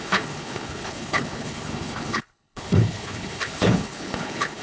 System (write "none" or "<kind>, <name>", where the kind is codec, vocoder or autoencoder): codec, HILCodec